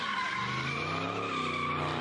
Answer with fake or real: real